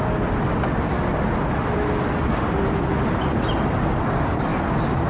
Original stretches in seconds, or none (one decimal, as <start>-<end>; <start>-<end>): 0.0-5.1